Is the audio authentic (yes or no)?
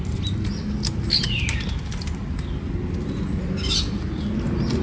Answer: yes